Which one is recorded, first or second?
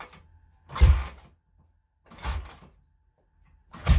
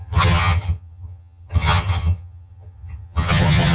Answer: first